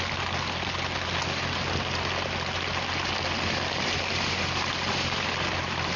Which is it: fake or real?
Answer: real